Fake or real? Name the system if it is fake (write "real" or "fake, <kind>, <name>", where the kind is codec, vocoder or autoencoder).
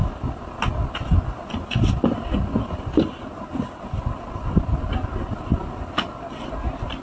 real